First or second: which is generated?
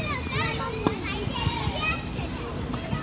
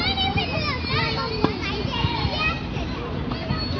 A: first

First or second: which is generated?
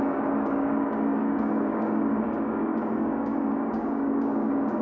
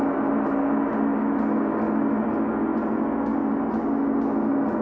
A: first